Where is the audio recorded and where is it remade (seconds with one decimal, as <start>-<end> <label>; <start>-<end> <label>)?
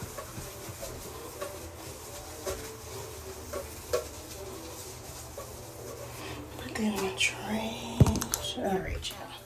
0.0-9.5 recorded